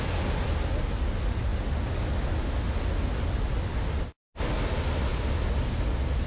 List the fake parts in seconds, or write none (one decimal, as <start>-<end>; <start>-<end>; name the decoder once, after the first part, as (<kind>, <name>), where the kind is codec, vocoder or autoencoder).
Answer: none